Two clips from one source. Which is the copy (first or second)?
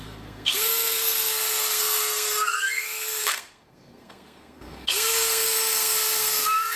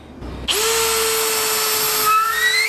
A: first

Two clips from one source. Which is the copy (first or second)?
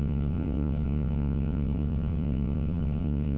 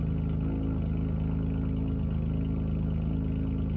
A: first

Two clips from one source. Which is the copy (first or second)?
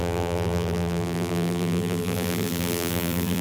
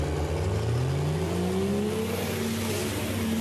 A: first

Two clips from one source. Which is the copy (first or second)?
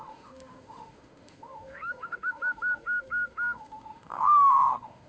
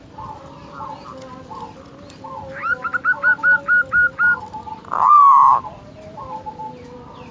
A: first